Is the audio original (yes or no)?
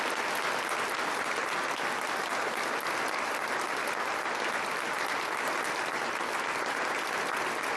yes